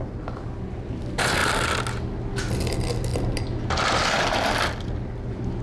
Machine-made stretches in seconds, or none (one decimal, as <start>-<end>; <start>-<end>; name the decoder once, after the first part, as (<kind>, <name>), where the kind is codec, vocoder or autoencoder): none